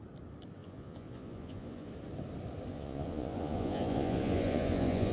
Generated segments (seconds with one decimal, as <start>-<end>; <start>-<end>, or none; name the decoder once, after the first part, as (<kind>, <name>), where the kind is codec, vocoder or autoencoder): 0.6-1.9 (vocoder, Vocos); 2.7-5.1

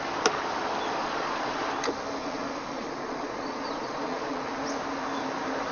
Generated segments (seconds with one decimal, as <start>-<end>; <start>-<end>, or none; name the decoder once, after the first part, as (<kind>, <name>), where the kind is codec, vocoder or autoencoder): 1.0-1.6 (vocoder, Vocos); 2.2-4.5

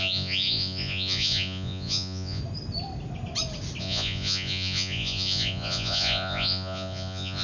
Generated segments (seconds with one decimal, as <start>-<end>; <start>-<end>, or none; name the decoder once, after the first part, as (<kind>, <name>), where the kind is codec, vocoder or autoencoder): 0.0-2.4 (vocoder, Vocos); 3.8-7.4

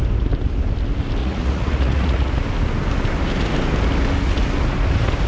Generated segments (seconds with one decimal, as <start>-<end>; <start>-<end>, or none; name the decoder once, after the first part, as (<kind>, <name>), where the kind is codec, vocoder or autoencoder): 1.2-2.3 (vocoder, Vocos)